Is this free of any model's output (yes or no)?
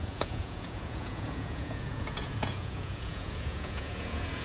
no